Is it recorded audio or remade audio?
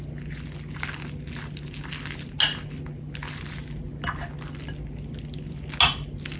recorded